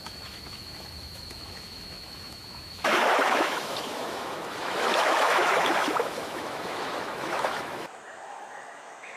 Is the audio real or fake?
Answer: fake